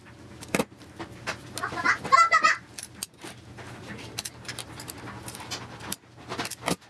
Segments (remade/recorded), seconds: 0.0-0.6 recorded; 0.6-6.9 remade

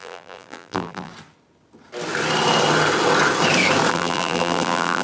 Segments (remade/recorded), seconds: 0.0-1.1 remade; 1.1-3.9 recorded; 3.9-5.0 remade

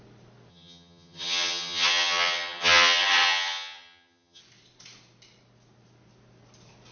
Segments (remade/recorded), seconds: 0.0-0.5 recorded; 0.5-4.4 remade; 4.4-6.9 recorded

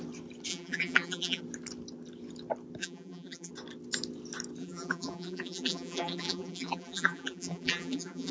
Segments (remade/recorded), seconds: 0.0-0.5 recorded; 0.5-1.4 remade; 1.4-2.8 recorded; 2.8-3.5 remade; 3.5-4.6 recorded; 4.6-8.3 remade

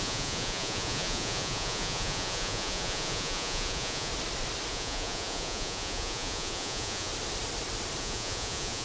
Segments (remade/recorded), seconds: 0.0-4.1 remade; 4.1-4.7 recorded; 4.7-7.1 remade; 7.1-8.0 recorded; 8.0-8.8 remade